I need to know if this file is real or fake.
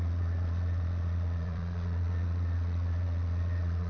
fake